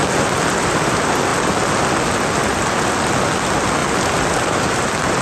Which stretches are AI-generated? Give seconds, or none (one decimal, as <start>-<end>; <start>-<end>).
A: 3.8-4.8